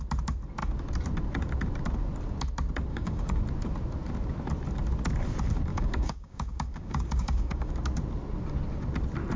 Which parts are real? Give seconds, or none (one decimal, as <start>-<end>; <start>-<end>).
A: 0.0-2.9; 3.4-5.7; 7.7-9.4